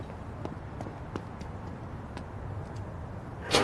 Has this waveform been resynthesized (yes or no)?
no